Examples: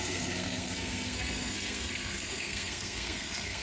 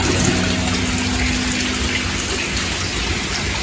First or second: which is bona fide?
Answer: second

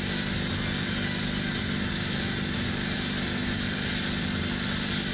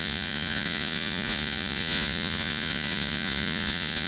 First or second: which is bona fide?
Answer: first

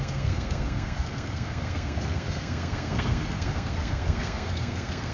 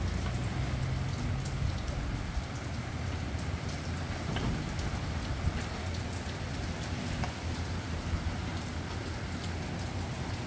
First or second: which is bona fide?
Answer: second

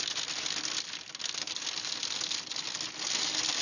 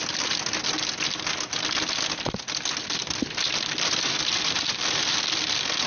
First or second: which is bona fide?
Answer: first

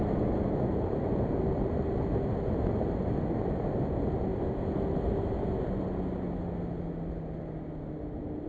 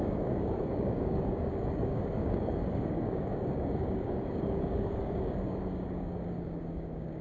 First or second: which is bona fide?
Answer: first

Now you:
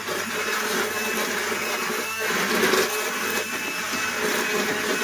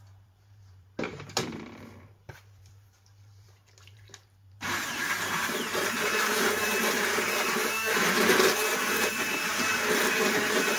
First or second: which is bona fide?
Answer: first